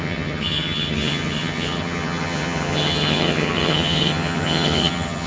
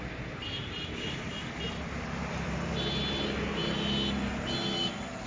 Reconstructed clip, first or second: first